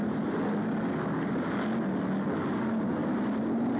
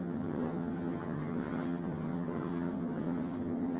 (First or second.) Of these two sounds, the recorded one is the first